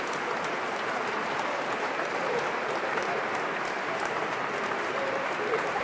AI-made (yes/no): yes